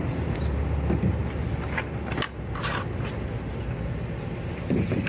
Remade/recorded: recorded